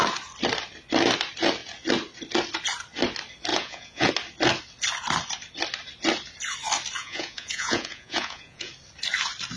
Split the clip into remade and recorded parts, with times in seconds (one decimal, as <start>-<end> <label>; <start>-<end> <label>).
0.0-3.5 recorded; 3.5-4.1 remade; 4.1-7.0 recorded; 7.0-8.7 remade; 8.7-9.6 recorded